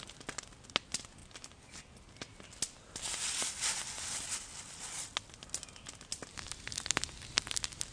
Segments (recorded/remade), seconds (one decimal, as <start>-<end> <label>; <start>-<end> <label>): 0.0-7.9 recorded